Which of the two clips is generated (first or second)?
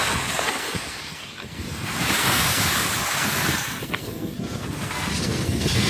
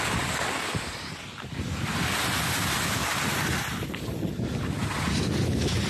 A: first